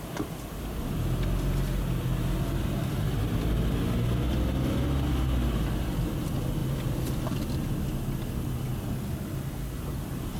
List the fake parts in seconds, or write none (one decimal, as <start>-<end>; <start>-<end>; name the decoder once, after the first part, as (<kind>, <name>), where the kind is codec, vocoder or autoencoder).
none